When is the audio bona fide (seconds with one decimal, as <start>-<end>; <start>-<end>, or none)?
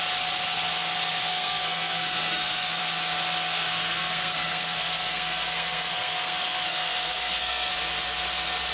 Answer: 0.0-1.2; 2.8-3.7; 7.7-8.7